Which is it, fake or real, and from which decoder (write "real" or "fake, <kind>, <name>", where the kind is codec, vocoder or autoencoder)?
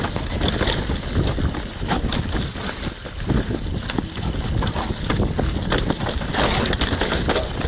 real